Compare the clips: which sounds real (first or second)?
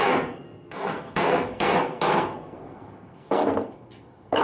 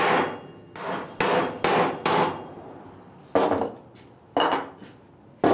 second